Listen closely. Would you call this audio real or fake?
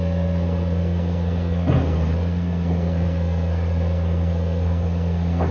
fake